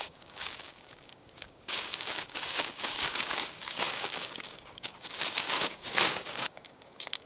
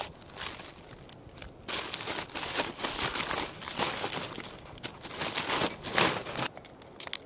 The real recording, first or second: second